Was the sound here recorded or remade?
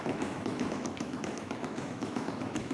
remade